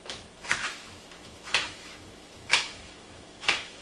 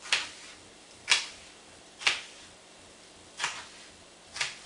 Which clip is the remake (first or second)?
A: first